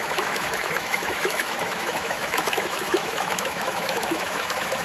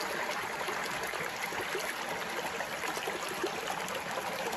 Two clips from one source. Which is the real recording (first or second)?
second